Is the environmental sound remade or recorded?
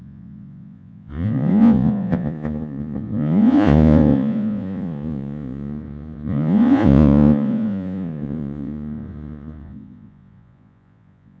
remade